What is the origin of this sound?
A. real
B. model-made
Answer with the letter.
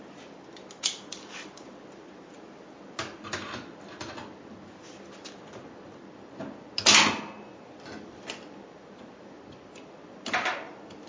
A